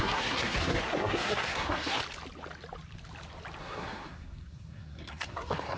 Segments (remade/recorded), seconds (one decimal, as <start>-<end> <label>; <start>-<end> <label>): 0.0-2.0 remade; 2.0-3.6 recorded; 3.6-5.8 remade